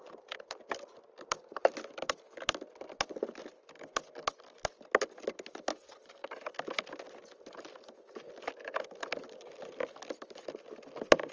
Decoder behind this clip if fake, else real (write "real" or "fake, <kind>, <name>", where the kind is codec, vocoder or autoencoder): real